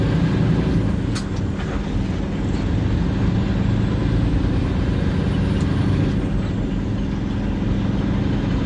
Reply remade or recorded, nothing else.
recorded